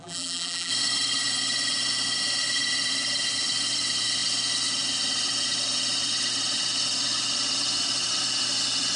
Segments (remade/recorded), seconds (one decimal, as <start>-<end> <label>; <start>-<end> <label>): 0.0-0.7 remade; 0.7-9.0 recorded